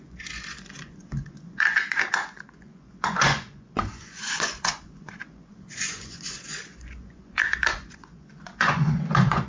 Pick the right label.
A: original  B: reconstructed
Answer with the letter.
B